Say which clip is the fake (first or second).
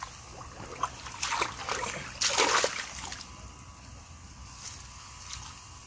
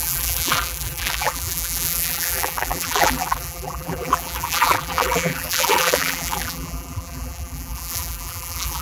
second